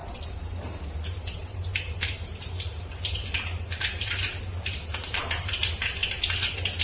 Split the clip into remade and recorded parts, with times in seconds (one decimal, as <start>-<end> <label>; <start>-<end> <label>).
0.0-0.8 remade; 0.8-1.4 recorded; 1.4-5.5 remade; 5.5-6.8 recorded